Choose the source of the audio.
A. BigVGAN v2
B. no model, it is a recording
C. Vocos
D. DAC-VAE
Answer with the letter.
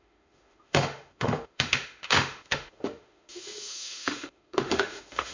D